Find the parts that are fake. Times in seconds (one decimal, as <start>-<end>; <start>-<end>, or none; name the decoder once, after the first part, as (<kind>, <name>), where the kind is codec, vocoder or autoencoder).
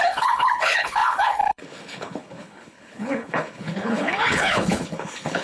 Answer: 0.0-5.4 (codec, HILCodec)